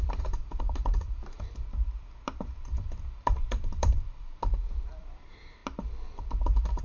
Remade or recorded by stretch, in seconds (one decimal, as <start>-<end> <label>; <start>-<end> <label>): 0.0-5.6 remade; 5.6-6.8 recorded